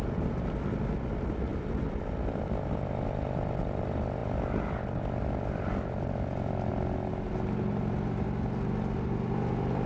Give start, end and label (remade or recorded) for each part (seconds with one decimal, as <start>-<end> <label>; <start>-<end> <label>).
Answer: 0.0-9.9 recorded